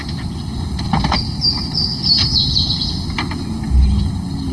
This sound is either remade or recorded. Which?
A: recorded